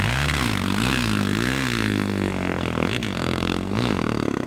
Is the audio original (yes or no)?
no